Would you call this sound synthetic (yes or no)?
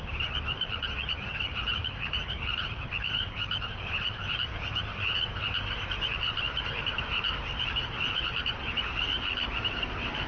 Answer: yes